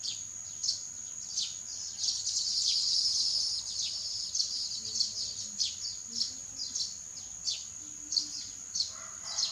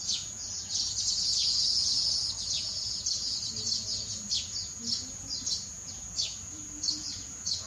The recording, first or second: first